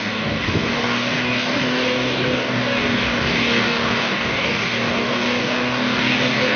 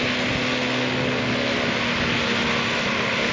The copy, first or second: first